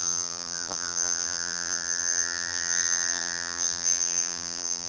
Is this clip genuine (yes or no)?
no